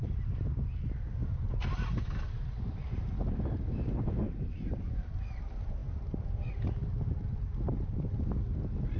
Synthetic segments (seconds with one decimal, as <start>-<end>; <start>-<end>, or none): none